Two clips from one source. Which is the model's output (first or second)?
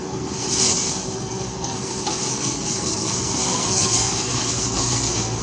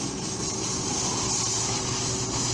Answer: first